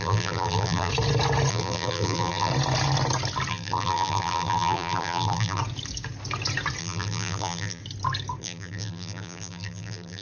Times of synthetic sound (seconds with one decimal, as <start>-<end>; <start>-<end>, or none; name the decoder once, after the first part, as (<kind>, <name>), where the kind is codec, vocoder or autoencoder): 0.0-0.9 (vocoder, BigVGAN v2); 1.5-2.5; 3.5-5.6; 6.8-7.8; 8.4-10.2